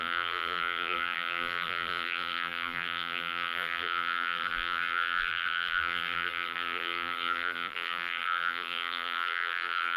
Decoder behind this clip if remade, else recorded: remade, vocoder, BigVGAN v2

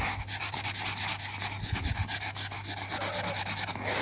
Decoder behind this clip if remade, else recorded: recorded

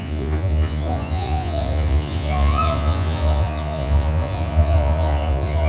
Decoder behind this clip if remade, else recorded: remade, vocoder, Vocos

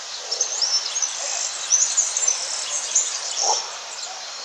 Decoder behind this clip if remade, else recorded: recorded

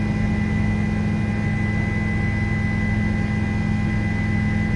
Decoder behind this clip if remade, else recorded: recorded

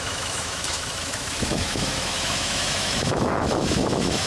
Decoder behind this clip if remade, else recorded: remade, autoencoder, DAC-VAE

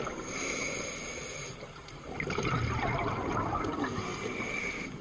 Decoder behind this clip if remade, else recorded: recorded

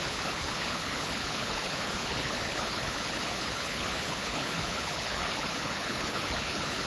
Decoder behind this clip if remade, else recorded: remade, codec, HILCodec